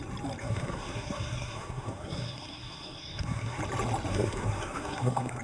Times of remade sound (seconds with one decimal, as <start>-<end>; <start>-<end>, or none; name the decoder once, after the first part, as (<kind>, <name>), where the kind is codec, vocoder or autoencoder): 0.4-3.6 (codec, SNAC); 4.1-5.4